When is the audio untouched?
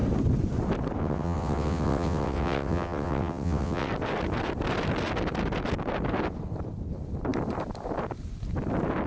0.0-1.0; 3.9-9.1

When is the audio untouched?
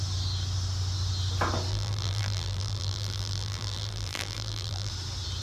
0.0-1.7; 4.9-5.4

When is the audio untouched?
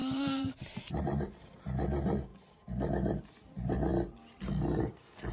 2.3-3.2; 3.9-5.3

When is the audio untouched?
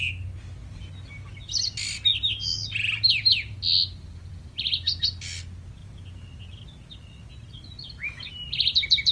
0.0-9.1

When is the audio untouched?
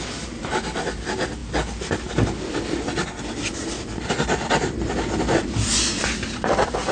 0.0-6.9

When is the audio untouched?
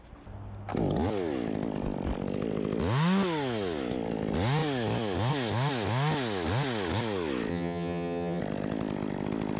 0.0-7.5; 8.4-9.6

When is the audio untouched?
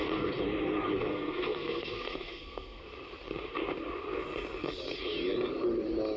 0.0-1.1; 2.8-6.2